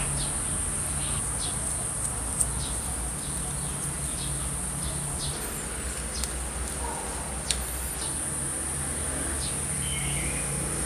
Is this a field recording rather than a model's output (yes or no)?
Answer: yes